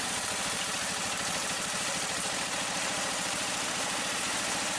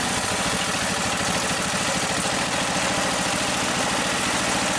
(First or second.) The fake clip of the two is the first